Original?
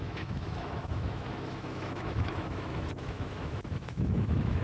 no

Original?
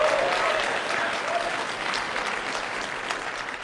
yes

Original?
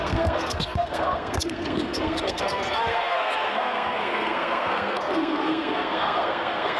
no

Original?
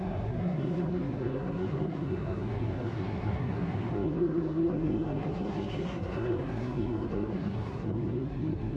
no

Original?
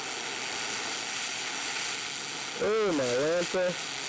yes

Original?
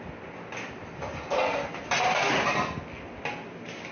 yes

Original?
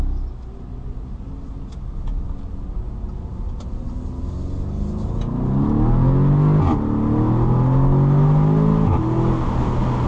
yes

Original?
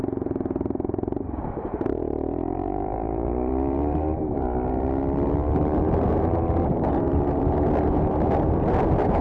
no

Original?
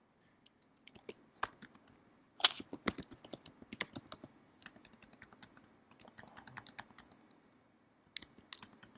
yes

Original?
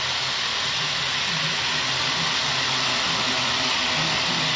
yes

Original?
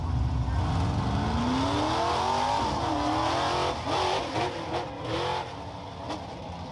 yes